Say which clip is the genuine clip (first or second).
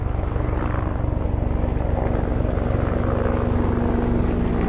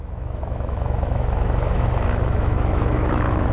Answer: first